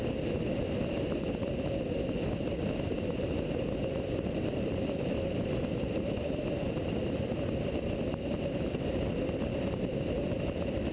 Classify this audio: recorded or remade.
recorded